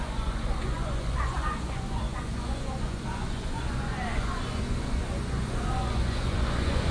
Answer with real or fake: fake